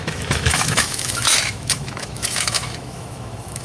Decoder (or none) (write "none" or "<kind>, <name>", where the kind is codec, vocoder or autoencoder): autoencoder, DAC-VAE